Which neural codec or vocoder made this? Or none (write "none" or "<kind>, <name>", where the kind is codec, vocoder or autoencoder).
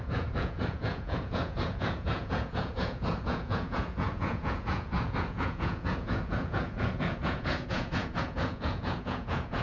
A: vocoder, Vocos